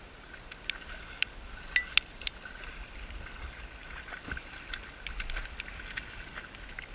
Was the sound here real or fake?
real